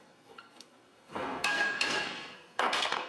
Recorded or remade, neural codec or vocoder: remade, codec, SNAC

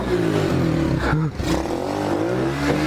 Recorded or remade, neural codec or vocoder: recorded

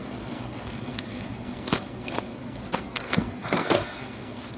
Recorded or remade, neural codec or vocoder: remade, codec, SNAC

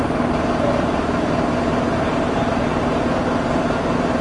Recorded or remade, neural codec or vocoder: recorded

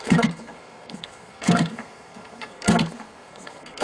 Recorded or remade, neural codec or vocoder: remade, codec, SNAC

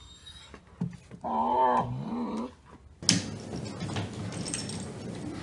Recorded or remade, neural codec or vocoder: recorded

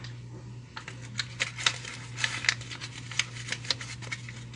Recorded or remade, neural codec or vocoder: recorded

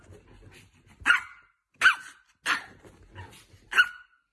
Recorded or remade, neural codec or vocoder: recorded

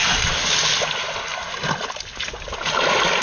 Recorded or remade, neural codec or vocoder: recorded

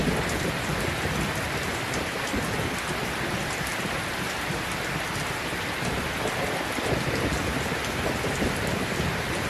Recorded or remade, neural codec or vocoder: recorded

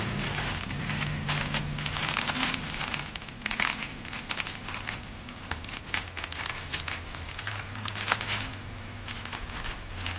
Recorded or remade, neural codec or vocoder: recorded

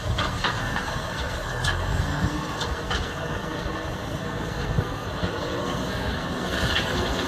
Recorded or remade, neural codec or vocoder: remade, codec, SNAC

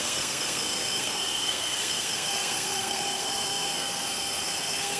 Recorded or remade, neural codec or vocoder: remade, codec, SNAC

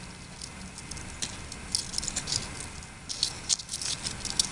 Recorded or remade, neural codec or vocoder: recorded